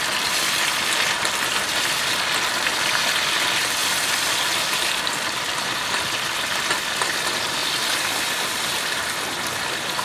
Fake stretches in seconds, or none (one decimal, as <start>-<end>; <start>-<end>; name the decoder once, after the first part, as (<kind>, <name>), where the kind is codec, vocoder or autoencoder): 3.8-6.8 (vocoder, BigVGAN v2); 7.6-8.6